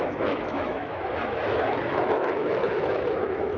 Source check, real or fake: fake